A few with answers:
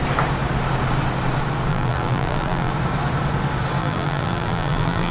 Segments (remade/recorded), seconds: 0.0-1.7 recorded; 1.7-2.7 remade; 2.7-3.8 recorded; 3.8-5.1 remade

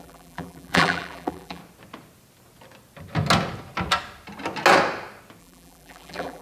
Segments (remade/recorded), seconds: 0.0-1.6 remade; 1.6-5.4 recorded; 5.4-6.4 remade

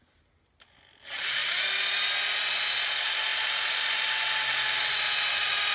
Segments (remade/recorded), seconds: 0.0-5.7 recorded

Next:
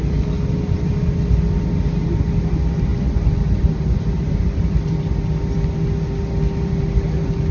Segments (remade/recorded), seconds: 0.0-7.5 recorded

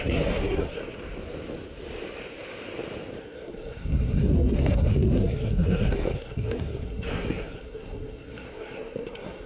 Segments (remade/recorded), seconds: 0.0-0.8 remade; 0.8-3.2 recorded; 3.2-9.5 remade